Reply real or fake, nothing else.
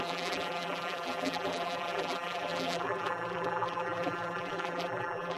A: fake